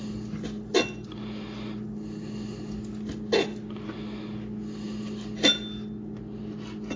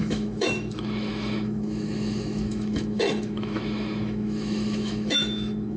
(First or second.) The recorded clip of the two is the first